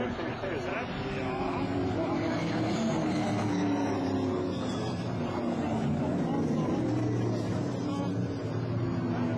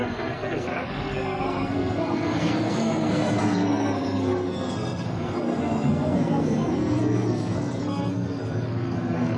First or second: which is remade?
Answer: second